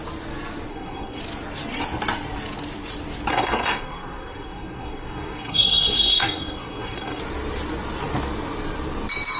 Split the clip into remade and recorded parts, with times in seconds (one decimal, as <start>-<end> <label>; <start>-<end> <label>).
0.0-0.7 recorded; 0.7-1.2 remade; 1.2-3.3 recorded; 3.3-7.2 remade; 7.2-9.4 recorded